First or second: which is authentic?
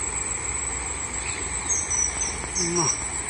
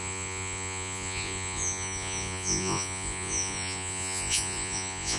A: first